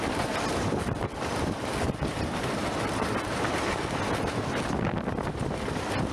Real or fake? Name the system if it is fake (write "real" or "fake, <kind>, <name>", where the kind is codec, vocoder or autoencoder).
real